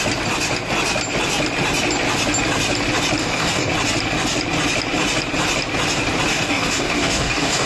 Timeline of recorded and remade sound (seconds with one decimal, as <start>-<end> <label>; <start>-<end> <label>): 0.0-3.2 recorded; 3.2-3.7 remade; 3.7-6.3 recorded; 6.3-7.7 remade